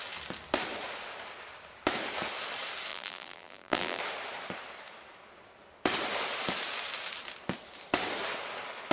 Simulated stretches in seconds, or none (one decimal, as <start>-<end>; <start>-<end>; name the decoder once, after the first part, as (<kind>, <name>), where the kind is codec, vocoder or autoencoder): 2.9-4.0 (vocoder, BigVGAN v2)